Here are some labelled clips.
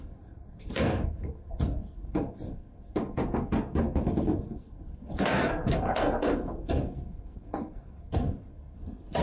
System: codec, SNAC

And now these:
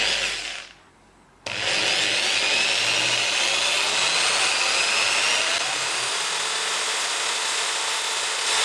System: none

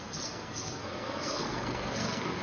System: codec, SNAC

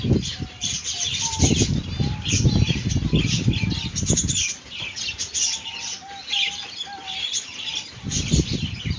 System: none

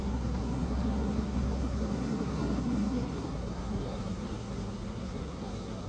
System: codec, SNAC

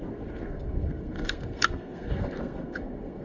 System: codec, SNAC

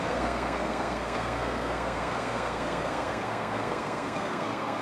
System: codec, SNAC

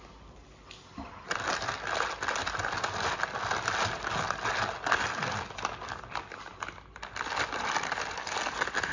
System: none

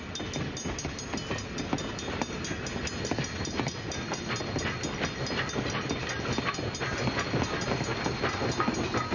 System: none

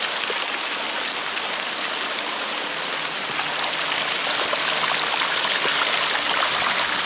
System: none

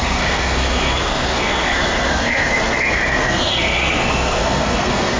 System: codec, SNAC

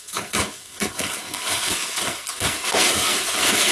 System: codec, SNAC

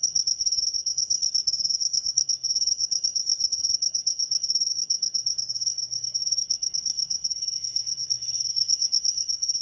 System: codec, SNAC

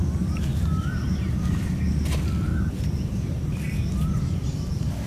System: none